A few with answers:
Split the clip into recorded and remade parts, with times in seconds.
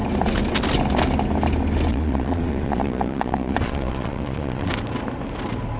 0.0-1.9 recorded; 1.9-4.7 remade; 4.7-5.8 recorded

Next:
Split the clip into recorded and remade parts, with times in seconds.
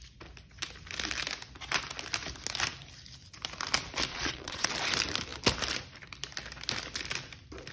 0.0-4.1 recorded; 4.1-4.7 remade; 4.7-7.7 recorded